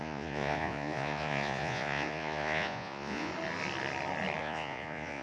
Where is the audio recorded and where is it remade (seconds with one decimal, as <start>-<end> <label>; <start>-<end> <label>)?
0.0-3.3 remade; 3.3-4.4 recorded; 4.4-5.2 remade